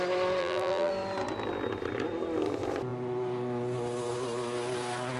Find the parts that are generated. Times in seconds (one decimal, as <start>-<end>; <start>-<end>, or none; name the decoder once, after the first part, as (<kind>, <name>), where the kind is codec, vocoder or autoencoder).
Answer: 0.4-0.9 (vocoder, BigVGAN v2)